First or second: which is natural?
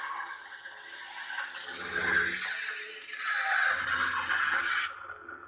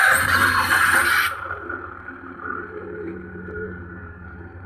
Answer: first